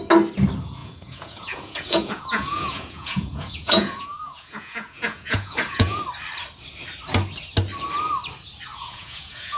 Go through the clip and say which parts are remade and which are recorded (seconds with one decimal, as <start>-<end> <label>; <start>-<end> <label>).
0.0-0.8 recorded; 0.8-6.0 remade; 6.0-8.7 recorded; 8.7-9.6 remade